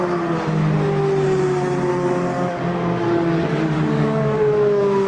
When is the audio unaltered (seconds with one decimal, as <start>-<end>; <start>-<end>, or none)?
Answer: 0.0-1.9